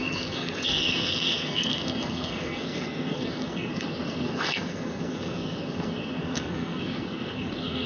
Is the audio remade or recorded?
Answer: remade